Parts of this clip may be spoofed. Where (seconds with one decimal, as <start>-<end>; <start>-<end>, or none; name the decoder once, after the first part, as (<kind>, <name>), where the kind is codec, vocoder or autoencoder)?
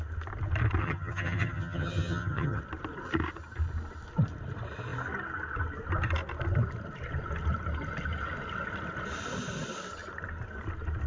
0.8-2.6 (vocoder, HiFi-GAN)